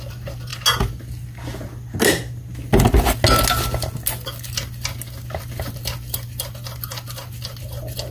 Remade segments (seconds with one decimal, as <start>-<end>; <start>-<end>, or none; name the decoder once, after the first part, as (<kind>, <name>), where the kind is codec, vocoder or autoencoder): none